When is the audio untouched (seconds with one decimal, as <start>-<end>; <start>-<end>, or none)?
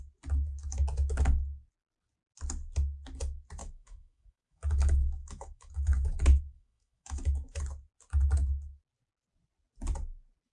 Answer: 0.0-3.6; 7.6-10.5